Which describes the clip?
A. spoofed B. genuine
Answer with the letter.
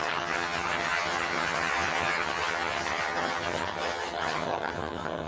A